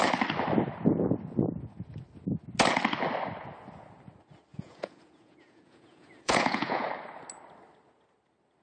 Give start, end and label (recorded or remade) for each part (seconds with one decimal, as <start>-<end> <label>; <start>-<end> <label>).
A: 0.0-4.5 recorded; 4.5-6.9 remade; 6.9-8.6 recorded